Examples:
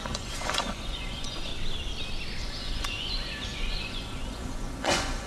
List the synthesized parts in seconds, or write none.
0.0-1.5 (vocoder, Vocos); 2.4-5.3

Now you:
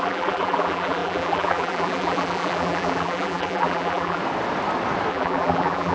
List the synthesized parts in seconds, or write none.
0.0-4.2 (vocoder, BigVGAN v2); 5.1-5.9

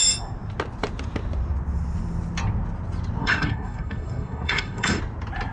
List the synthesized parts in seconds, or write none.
3.2-5.0 (codec, SNAC)

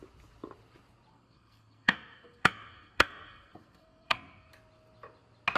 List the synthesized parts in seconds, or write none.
1.1-4.5 (codec, SNAC)

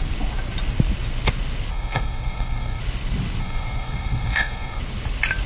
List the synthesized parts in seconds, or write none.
1.7-2.8 (codec, SNAC); 3.4-4.8